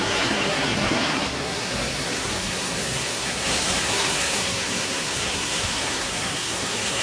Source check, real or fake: fake